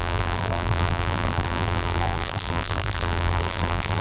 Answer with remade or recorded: remade